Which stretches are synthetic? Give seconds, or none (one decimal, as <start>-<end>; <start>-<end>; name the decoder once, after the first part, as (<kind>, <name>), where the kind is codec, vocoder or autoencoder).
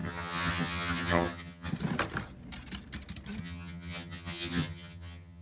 0.0-1.7 (vocoder, HiFi-GAN); 3.4-5.4